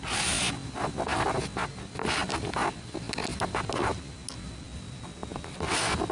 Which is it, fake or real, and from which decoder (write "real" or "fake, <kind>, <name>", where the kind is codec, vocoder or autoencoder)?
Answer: real